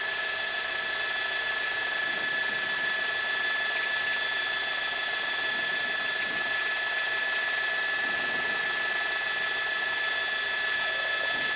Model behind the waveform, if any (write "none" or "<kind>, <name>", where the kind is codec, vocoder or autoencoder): none